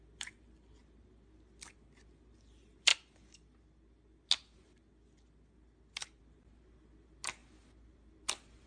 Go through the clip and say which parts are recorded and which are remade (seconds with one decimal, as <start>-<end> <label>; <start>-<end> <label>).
0.0-8.7 recorded